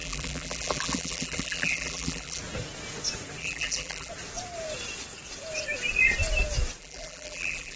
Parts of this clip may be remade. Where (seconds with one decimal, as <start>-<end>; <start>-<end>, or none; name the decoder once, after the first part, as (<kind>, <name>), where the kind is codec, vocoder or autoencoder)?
0.0-2.4 (vocoder, BigVGAN v2); 3.4-4.1; 6.8-7.8

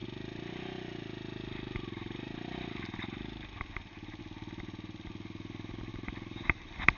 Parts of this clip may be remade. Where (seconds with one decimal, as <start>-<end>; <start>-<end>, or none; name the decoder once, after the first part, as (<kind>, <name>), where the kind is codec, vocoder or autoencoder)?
5.9-7.0 (vocoder, BigVGAN v2)

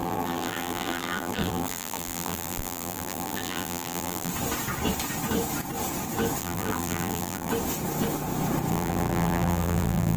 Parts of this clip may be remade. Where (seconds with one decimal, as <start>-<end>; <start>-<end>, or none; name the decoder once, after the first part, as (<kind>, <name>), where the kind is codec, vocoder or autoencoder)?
0.0-4.3 (vocoder, BigVGAN v2); 6.4-7.5; 8.7-10.2

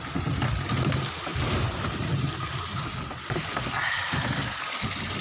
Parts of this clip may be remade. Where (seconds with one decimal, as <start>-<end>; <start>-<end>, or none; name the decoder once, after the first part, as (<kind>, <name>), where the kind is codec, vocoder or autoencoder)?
1.3-3.9 (vocoder, BigVGAN v2)

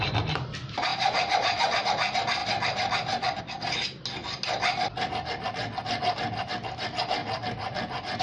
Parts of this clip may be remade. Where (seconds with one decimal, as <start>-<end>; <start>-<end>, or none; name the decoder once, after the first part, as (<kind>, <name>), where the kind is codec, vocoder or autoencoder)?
0.9-1.8 (vocoder, BigVGAN v2)

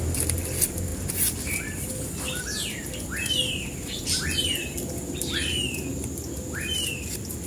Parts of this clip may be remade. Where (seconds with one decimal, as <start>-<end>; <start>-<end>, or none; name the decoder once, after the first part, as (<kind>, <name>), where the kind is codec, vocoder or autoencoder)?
0.0-7.5 (vocoder, BigVGAN v2)